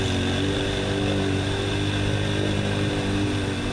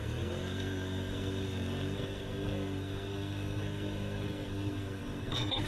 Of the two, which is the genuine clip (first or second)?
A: first